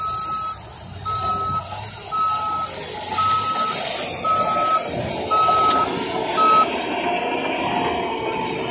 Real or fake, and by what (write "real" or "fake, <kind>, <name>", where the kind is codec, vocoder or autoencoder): real